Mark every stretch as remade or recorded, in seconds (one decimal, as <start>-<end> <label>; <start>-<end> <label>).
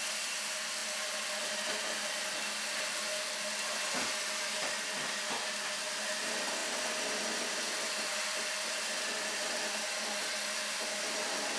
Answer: 0.0-11.6 recorded